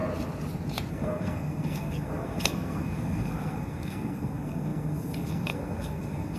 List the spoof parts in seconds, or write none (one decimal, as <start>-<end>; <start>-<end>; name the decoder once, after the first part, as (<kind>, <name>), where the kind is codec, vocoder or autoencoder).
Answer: 0.9-6.4 (codec, SNAC)